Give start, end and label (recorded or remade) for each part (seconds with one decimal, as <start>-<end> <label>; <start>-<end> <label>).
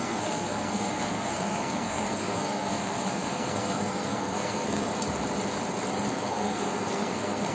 0.0-4.9 remade; 4.9-6.1 recorded; 6.1-7.5 remade